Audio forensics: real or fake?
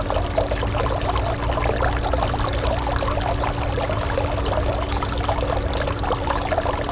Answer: real